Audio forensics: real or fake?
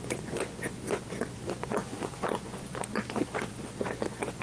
fake